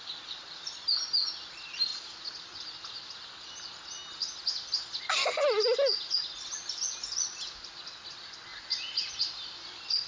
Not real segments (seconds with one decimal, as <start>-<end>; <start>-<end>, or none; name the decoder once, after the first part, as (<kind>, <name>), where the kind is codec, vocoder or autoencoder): none